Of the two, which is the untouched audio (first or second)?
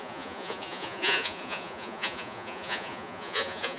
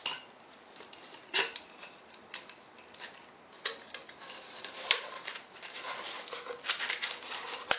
second